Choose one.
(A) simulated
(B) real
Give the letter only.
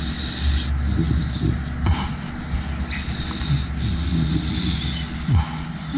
B